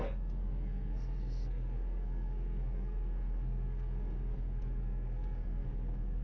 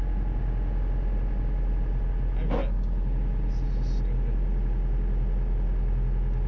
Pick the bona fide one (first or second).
second